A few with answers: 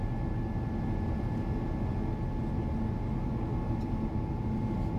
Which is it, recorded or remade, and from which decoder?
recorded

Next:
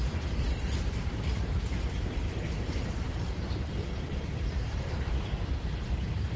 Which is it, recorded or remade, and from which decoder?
remade, vocoder, BigVGAN v2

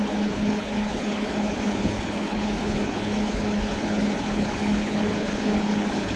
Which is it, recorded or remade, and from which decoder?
remade, codec, HILCodec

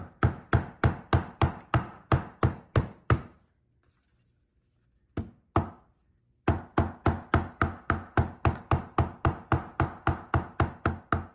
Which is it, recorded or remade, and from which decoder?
recorded